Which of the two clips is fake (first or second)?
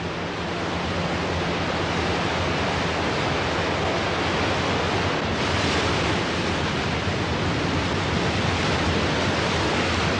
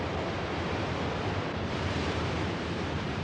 second